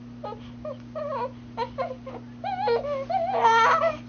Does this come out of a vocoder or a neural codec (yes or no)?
no